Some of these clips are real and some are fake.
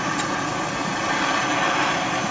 real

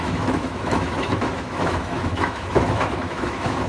fake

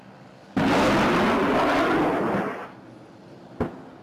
real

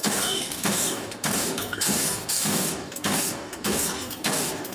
fake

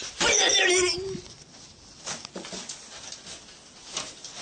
real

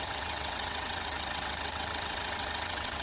fake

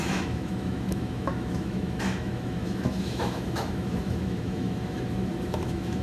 fake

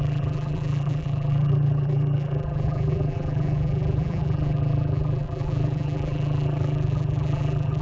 fake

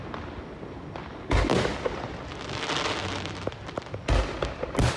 real